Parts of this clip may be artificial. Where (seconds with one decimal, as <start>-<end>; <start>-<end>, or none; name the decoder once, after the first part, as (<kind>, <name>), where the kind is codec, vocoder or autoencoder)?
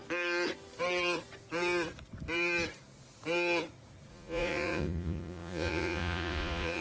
4.1-6.8 (vocoder, Vocos)